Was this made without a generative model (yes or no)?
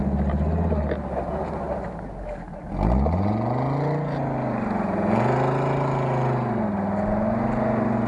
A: yes